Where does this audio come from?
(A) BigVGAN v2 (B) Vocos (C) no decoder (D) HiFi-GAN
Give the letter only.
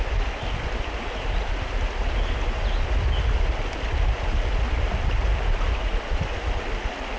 C